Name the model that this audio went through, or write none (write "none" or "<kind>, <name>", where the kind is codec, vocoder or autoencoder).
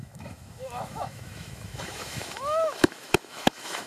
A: autoencoder, DAC-VAE